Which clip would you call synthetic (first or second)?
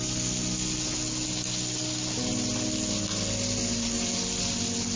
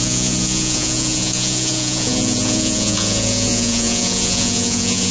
second